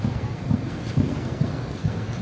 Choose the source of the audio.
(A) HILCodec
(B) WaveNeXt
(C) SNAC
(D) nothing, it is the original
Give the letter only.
C